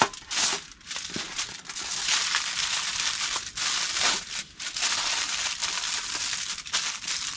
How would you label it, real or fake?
real